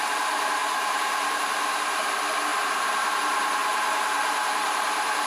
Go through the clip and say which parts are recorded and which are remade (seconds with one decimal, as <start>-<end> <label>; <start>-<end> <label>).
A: 0.0-0.6 recorded; 0.6-1.4 remade; 1.4-2.5 recorded; 2.5-3.2 remade; 3.2-3.6 recorded; 3.6-5.3 remade